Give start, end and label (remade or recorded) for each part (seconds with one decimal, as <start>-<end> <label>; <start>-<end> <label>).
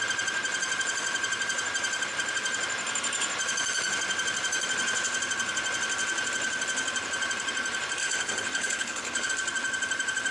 0.0-8.0 recorded; 8.0-9.3 remade; 9.3-10.3 recorded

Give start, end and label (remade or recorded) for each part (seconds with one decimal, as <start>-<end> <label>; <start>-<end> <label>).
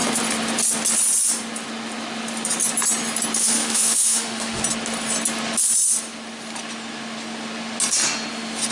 0.0-3.4 recorded; 3.4-4.6 remade; 4.6-8.7 recorded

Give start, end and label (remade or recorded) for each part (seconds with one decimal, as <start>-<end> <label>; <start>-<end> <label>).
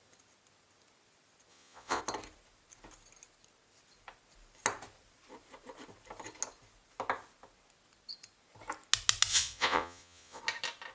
0.0-1.5 recorded; 1.5-2.0 remade; 2.0-9.3 recorded; 9.3-10.4 remade; 10.4-10.9 recorded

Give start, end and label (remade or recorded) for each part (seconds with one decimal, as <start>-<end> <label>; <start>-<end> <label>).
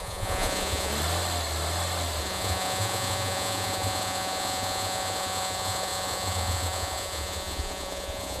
0.0-0.9 remade; 0.9-2.2 recorded; 2.2-8.4 remade